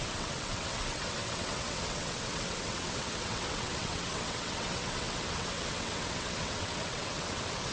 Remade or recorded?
remade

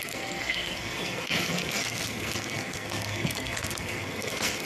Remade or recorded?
remade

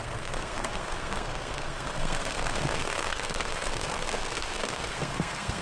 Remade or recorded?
remade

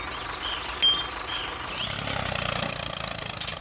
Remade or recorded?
recorded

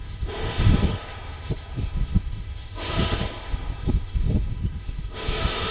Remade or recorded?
remade